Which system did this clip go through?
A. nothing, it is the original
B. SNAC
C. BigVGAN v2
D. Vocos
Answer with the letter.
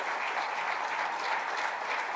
C